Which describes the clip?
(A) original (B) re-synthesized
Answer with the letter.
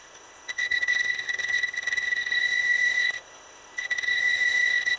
B